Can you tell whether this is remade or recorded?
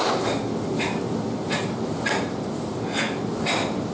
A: recorded